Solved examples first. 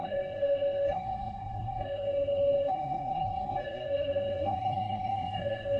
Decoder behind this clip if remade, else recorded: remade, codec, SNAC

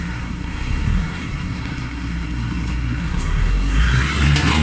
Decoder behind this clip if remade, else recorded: remade, codec, SNAC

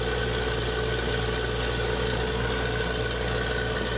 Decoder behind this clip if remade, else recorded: recorded